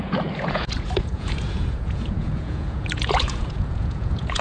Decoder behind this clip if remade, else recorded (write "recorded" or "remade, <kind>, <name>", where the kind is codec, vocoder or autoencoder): remade, vocoder, Vocos